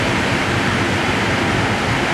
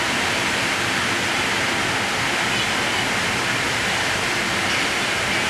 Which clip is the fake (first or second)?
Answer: first